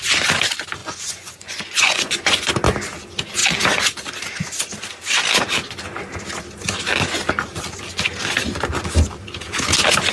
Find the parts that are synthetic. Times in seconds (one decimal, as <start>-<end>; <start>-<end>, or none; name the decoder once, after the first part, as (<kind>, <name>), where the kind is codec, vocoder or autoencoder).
0.8-2.5 (vocoder, Vocos)